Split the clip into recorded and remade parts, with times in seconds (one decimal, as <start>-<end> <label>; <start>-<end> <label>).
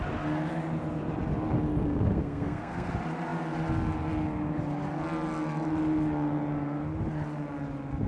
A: 0.0-1.8 recorded; 1.8-2.9 remade; 2.9-8.1 recorded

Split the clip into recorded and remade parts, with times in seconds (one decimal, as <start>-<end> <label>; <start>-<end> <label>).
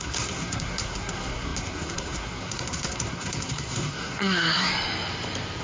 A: 0.0-4.7 remade; 4.7-5.6 recorded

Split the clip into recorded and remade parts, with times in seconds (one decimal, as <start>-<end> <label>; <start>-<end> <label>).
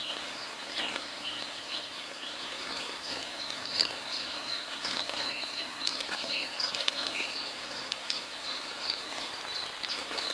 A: 0.0-9.3 remade; 9.3-9.9 recorded; 9.9-10.3 remade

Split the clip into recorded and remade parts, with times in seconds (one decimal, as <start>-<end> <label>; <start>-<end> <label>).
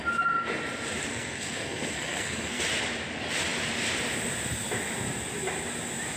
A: 0.0-1.1 recorded; 1.1-2.6 remade; 2.6-6.2 recorded